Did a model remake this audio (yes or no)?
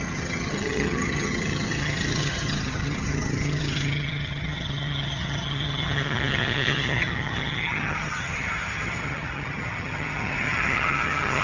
yes